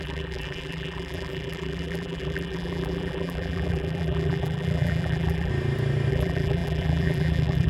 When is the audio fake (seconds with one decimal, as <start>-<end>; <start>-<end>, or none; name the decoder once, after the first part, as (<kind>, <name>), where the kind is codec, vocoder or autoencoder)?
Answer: 0.0-5.5 (vocoder, BigVGAN v2); 6.1-7.7